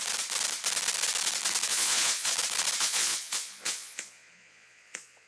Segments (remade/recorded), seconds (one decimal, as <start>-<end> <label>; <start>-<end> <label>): 0.0-1.7 recorded; 1.7-2.3 remade; 2.3-2.8 recorded; 2.8-5.3 remade